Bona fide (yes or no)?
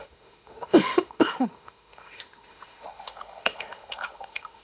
no